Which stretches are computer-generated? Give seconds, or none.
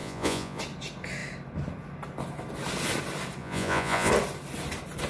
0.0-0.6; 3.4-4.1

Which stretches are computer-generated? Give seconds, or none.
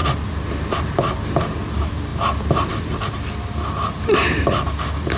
none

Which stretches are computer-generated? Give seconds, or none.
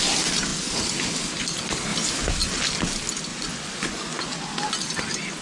3.3-4.3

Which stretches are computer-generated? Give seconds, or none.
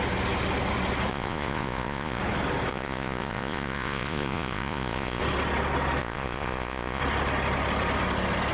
1.1-2.2; 2.7-5.2; 6.0-7.0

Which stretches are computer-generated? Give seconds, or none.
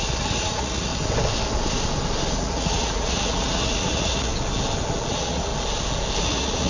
0.0-0.9; 2.3-4.3; 5.1-5.5; 6.2-6.7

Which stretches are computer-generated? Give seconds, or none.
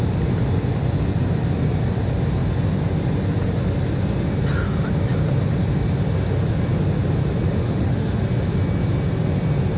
7.6-8.2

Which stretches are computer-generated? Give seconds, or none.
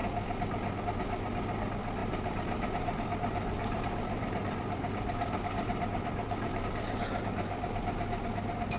2.0-6.6